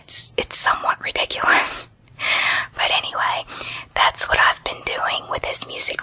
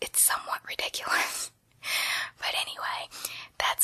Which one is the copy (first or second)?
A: first